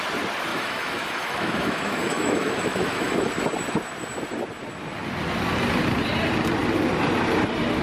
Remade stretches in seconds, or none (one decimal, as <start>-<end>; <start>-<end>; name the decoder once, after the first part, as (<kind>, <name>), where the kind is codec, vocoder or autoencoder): 0.5-3.3 (autoencoder, DAC-VAE)